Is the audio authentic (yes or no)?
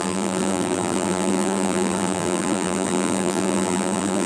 no